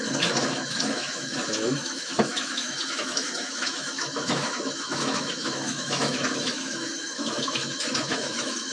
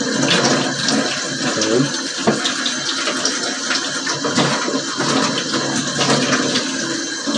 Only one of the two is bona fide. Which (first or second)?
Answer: second